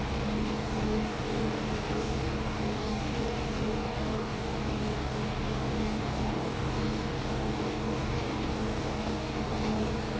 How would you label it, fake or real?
fake